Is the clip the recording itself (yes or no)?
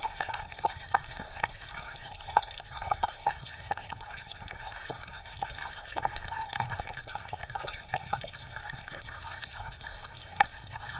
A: no